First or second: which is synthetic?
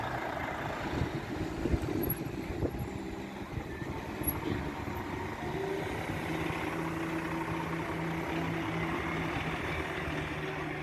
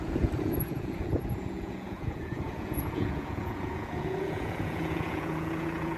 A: second